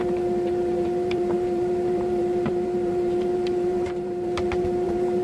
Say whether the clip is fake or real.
fake